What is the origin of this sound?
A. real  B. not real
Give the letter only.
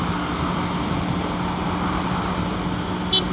A